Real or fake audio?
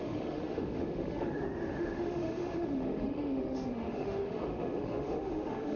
fake